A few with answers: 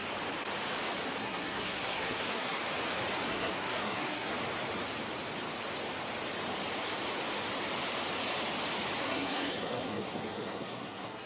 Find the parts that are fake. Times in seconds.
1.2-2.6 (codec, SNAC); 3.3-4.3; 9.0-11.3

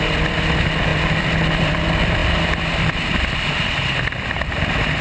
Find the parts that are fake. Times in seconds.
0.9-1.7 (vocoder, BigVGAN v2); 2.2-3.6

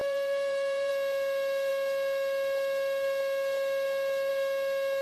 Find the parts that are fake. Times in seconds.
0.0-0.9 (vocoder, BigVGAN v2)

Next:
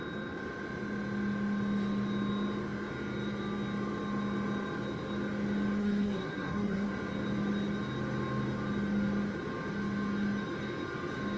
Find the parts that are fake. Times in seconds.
5.8-6.9 (codec, SNAC)

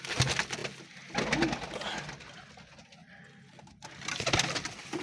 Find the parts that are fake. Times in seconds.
none